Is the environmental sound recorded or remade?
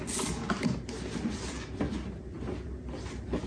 recorded